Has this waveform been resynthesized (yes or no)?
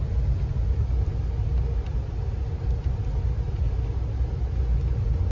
no